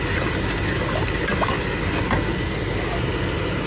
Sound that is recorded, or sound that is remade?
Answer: recorded